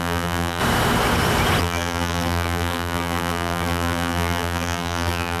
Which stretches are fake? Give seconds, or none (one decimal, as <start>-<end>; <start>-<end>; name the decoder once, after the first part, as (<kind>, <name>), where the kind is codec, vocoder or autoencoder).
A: 0.0-0.6 (vocoder, BigVGAN v2); 1.6-5.4